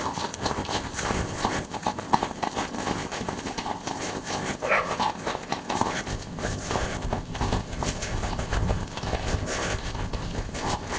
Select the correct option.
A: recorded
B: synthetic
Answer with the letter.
B